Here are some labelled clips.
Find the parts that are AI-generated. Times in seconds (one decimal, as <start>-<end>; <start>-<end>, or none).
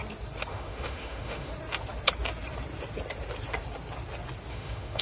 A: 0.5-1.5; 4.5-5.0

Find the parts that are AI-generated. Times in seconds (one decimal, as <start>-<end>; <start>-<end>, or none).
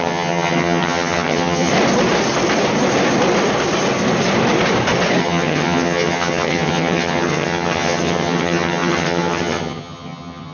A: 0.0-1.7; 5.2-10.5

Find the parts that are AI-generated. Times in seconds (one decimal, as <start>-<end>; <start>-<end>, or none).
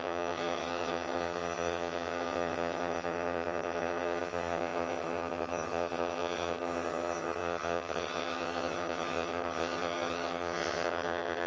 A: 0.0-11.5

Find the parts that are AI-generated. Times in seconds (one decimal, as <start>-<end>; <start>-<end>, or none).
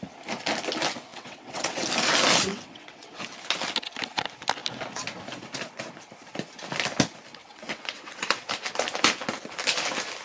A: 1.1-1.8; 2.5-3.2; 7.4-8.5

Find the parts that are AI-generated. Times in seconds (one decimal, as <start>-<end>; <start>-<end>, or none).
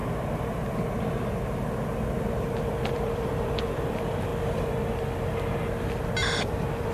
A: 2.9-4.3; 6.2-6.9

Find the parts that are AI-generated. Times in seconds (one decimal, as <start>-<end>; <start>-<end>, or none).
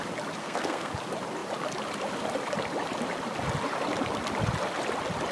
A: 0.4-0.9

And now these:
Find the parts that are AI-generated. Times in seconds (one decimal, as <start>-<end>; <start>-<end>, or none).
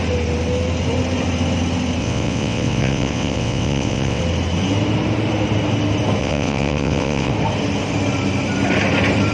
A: 2.0-4.2; 6.2-7.3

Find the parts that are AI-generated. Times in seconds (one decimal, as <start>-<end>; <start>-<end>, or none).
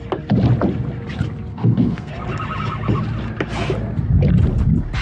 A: 1.5-2.1